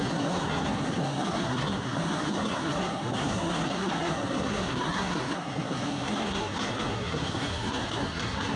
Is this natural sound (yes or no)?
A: no